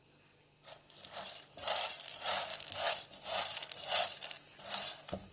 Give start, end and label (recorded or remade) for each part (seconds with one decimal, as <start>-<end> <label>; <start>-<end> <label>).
0.0-2.5 recorded; 2.5-3.0 remade; 3.0-5.3 recorded